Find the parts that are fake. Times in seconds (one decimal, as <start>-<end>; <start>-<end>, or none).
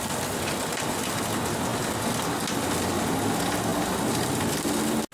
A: 3.7-4.3